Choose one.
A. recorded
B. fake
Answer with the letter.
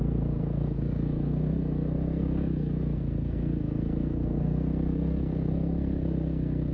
B